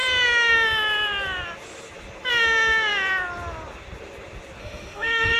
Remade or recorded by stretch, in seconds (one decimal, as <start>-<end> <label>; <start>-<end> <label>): 0.0-4.6 recorded; 4.6-5.4 remade